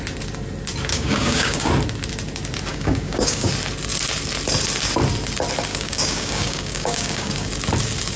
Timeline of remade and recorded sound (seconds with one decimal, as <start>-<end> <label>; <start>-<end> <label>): 0.0-0.9 recorded; 0.9-1.7 remade; 1.7-2.7 recorded; 2.7-3.5 remade; 3.5-5.7 recorded; 5.7-7.5 remade; 7.5-8.2 recorded